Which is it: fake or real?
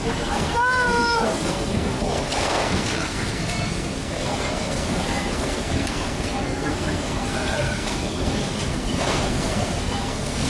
fake